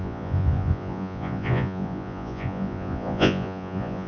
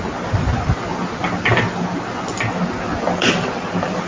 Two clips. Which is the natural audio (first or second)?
second